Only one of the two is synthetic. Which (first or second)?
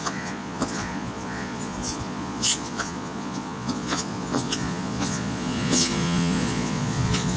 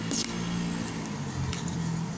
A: first